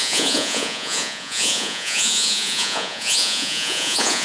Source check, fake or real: fake